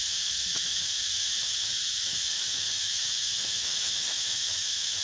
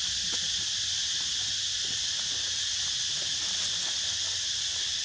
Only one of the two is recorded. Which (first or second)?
second